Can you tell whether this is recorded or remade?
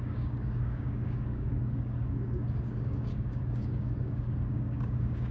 remade